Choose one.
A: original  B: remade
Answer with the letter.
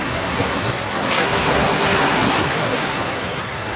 B